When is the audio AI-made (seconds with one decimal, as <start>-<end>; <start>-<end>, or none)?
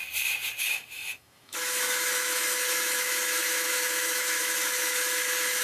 0.6-5.6